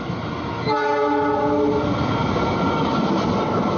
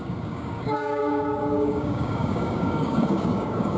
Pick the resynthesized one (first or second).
second